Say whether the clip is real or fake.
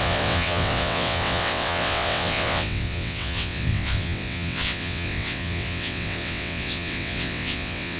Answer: fake